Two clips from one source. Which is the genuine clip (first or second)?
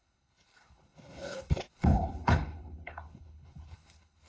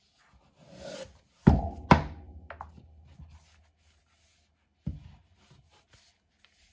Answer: second